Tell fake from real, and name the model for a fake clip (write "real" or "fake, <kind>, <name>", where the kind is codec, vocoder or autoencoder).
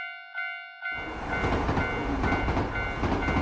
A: real